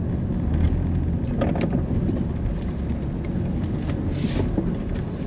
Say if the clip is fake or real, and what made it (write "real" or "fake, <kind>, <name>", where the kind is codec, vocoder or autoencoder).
real